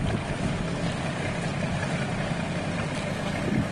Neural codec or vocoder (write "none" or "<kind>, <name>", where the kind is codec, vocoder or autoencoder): none